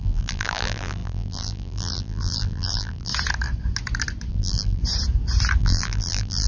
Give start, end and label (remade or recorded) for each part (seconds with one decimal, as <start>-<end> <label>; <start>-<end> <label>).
0.0-3.1 remade; 3.1-4.3 recorded; 4.3-4.8 remade; 4.8-5.6 recorded; 5.6-6.5 remade